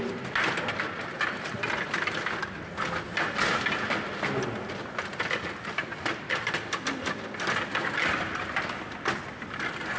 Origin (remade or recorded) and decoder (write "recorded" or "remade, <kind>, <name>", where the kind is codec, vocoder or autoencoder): recorded